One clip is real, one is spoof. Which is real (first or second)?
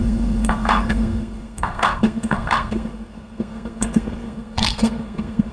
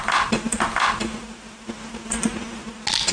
second